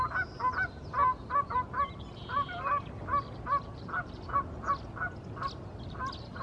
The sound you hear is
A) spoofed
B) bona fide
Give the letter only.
B